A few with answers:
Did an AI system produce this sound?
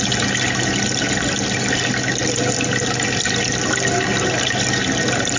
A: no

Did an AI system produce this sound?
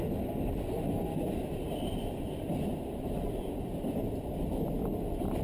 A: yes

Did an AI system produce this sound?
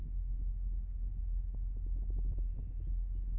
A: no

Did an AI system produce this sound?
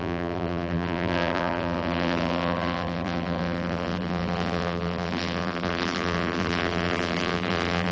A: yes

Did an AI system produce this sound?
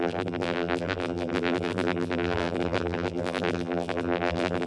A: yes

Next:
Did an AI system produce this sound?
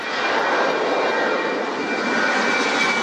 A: no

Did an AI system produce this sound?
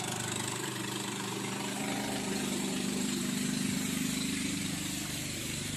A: yes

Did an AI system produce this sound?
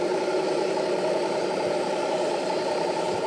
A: yes